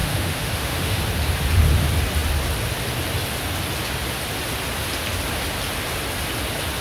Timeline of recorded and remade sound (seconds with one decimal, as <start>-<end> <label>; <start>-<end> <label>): 0.0-1.0 remade; 1.0-6.8 recorded